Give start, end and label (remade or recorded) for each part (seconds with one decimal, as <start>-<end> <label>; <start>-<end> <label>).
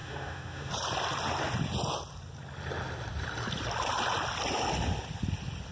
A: 0.0-0.7 remade; 0.7-5.7 recorded